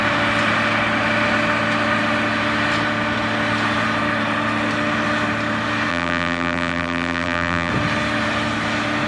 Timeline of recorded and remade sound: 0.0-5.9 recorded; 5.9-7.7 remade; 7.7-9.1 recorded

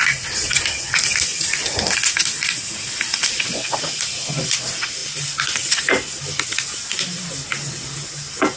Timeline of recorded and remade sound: 0.0-8.6 recorded

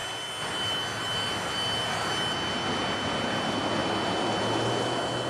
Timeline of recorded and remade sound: 0.0-5.3 recorded

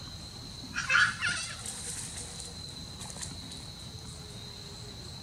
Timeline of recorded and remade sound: 0.0-5.2 recorded

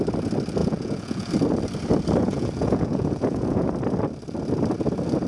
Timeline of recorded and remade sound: 0.0-0.6 recorded; 0.6-1.3 remade; 1.3-2.2 recorded; 2.2-3.7 remade; 3.7-5.3 recorded

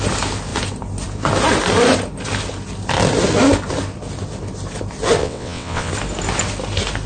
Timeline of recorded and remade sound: 0.0-5.2 recorded; 5.2-5.9 remade; 5.9-7.1 recorded

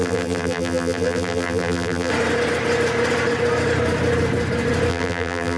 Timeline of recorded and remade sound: 0.0-2.1 remade; 2.1-4.9 recorded; 4.9-5.6 remade

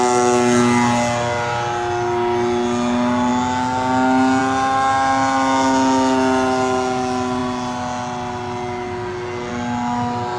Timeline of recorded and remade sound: 0.0-10.4 recorded